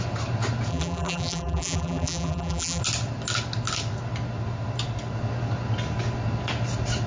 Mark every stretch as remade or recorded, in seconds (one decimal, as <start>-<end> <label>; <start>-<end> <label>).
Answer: 0.0-0.7 recorded; 0.7-2.8 remade; 2.8-7.1 recorded